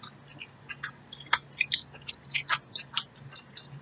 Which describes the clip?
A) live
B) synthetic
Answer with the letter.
A